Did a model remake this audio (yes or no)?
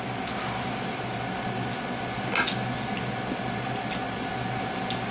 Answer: no